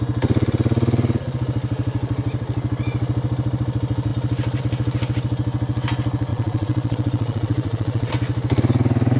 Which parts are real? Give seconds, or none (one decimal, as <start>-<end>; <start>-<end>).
0.0-6.3; 8.1-9.2